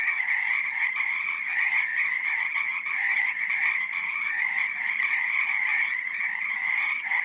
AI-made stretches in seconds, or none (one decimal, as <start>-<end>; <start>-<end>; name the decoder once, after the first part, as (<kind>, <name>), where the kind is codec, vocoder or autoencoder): 0.0-7.2 (vocoder, HiFi-GAN)